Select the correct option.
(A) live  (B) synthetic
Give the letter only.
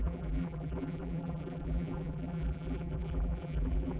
B